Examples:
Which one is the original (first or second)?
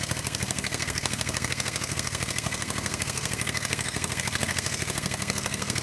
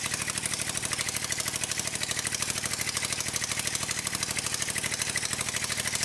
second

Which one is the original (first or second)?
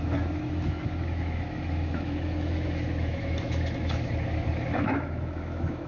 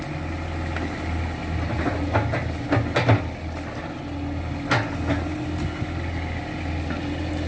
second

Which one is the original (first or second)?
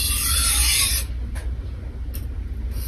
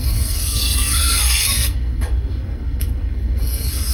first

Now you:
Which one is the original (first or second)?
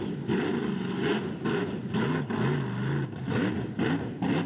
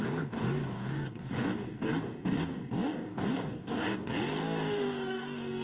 first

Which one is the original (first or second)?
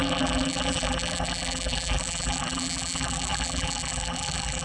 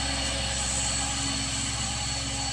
second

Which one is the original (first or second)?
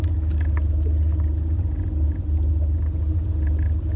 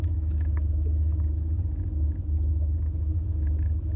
first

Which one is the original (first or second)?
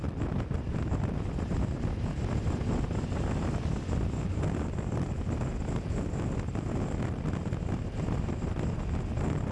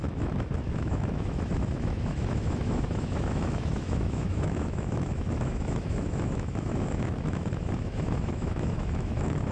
first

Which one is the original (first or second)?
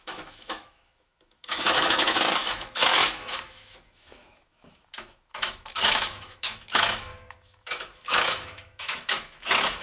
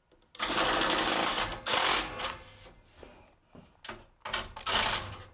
second